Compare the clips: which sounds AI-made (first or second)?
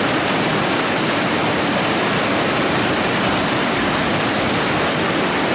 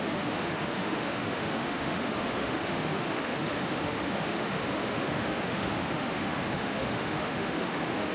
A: second